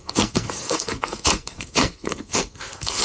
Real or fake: fake